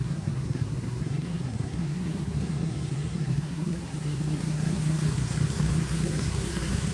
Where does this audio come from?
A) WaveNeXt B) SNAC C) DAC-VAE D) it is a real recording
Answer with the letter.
B